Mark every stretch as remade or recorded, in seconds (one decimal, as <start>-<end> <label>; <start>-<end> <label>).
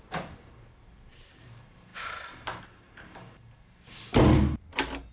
0.0-5.1 recorded